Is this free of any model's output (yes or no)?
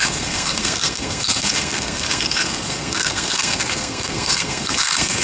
no